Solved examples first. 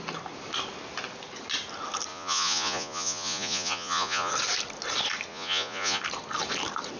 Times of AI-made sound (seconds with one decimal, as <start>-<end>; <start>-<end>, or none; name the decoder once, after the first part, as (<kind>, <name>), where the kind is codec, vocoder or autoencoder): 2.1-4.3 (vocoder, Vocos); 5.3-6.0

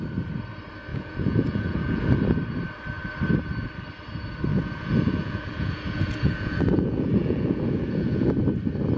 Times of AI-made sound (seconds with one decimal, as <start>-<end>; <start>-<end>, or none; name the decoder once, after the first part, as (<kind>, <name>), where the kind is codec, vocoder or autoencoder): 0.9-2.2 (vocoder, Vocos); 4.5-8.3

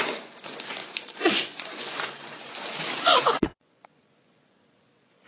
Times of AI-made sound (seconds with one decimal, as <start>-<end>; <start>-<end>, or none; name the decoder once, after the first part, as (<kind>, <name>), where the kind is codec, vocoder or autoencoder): 0.0-5.3 (vocoder, Vocos)

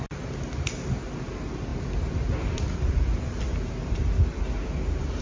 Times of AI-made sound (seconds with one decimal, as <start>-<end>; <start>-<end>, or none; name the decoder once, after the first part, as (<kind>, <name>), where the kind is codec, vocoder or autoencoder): none

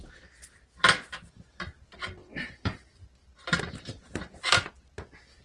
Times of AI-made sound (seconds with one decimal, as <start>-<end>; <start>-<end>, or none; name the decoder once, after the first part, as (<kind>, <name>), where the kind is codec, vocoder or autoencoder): 2.2-3.6 (vocoder, BigVGAN v2); 4.0-4.7